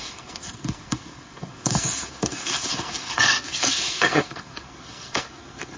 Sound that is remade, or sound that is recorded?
remade